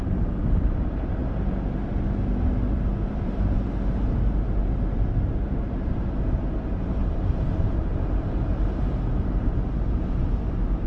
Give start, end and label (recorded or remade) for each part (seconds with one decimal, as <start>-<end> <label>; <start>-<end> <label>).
0.0-1.2 remade; 1.2-3.1 recorded; 3.1-10.9 remade